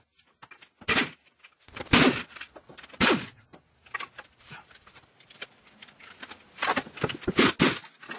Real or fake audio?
real